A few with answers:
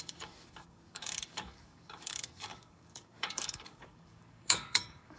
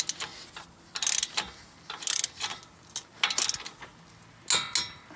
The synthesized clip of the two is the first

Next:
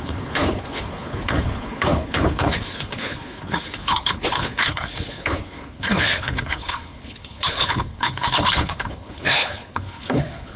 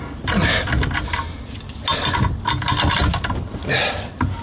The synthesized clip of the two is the first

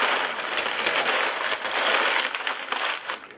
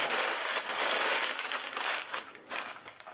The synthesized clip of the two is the second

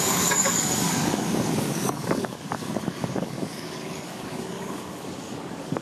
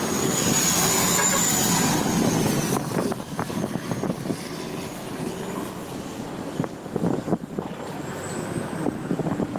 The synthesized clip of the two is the first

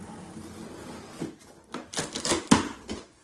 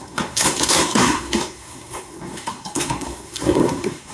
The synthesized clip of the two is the second